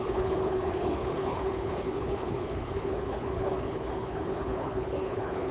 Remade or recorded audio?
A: remade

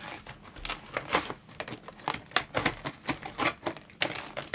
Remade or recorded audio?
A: recorded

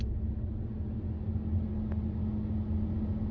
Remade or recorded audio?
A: recorded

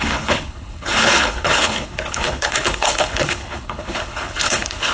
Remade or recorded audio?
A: remade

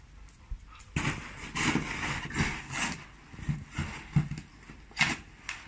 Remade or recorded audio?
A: recorded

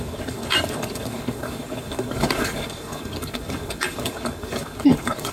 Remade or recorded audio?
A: remade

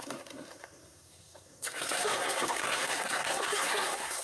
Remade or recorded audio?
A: remade